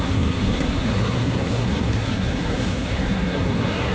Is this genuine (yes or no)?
no